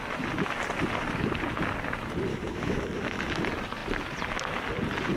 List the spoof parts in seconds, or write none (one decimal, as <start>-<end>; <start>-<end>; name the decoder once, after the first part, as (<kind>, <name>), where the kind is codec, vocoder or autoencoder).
2.3-3.4 (autoencoder, DAC-VAE)